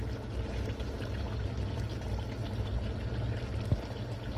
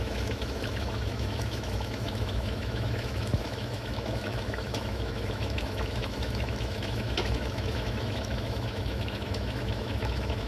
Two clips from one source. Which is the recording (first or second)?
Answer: first